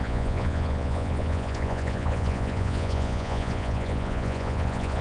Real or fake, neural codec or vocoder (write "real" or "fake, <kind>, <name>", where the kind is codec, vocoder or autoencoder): fake, vocoder, Vocos